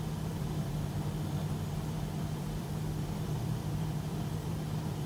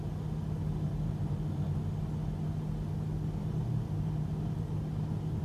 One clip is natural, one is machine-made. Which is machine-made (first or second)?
first